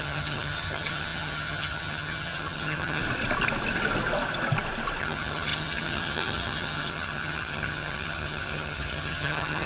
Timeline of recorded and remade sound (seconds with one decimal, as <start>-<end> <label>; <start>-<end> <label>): 0.0-3.0 remade; 3.0-5.0 recorded; 5.0-9.7 remade

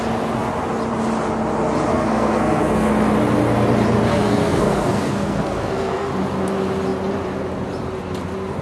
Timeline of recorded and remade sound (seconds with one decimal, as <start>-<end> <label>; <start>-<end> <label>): 0.0-1.9 recorded; 1.9-2.9 remade; 2.9-4.1 recorded; 4.1-6.1 remade; 6.1-8.6 recorded

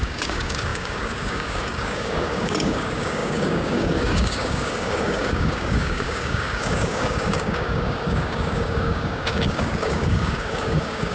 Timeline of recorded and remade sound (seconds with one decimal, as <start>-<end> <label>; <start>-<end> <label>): 0.0-11.1 remade

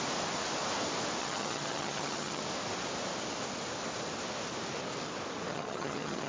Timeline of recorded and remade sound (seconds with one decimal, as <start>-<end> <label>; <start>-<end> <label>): 0.0-1.2 recorded; 1.2-2.4 remade; 2.4-5.5 recorded; 5.5-6.3 remade

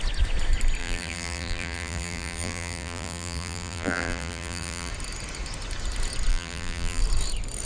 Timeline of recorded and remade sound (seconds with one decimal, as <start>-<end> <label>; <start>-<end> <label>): 0.0-0.8 recorded; 0.8-4.9 remade; 4.9-6.3 recorded; 6.3-7.0 remade; 7.0-7.7 recorded

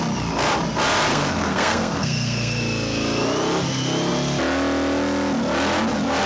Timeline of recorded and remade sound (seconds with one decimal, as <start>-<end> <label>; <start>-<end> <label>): 0.0-1.1 recorded; 1.1-2.6 remade; 2.6-6.3 recorded